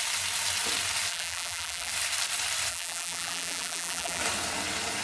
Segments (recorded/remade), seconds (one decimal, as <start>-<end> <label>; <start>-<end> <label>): 0.0-1.1 recorded; 1.1-1.9 remade; 1.9-2.7 recorded; 2.7-4.2 remade; 4.2-5.0 recorded